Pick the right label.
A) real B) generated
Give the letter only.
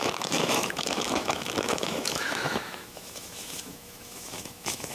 B